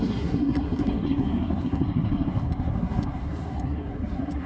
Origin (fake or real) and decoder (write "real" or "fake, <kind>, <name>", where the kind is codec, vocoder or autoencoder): fake, codec, SNAC